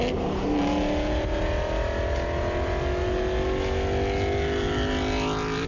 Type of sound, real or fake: real